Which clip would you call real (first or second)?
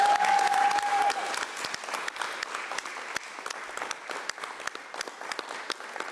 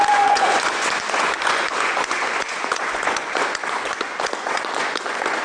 first